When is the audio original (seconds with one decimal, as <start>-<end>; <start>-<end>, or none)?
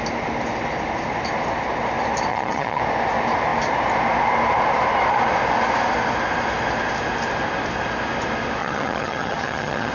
0.0-2.3; 2.8-8.6